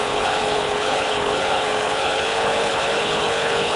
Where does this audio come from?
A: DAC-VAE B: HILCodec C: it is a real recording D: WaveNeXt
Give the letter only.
B